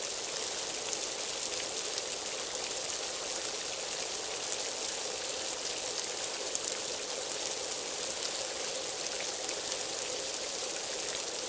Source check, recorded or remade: recorded